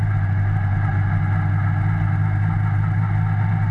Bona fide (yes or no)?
yes